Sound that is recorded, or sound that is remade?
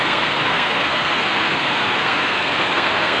remade